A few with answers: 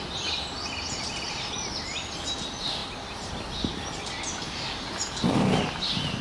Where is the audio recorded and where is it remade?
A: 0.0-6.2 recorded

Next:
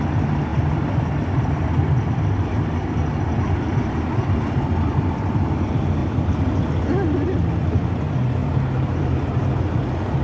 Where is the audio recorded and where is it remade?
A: 0.0-0.5 recorded; 0.5-5.2 remade; 5.2-6.0 recorded; 6.0-6.7 remade; 6.7-8.4 recorded; 8.4-9.7 remade; 9.7-10.2 recorded

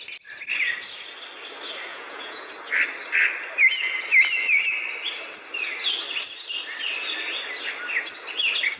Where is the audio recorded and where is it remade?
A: 0.0-1.9 recorded; 1.9-2.5 remade; 2.5-8.8 recorded